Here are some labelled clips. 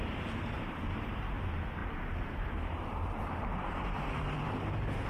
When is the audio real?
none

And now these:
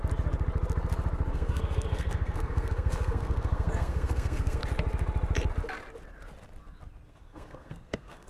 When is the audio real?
0.0-1.3; 4.6-7.1